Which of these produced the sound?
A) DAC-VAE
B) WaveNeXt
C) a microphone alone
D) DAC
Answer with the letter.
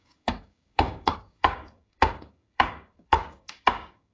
D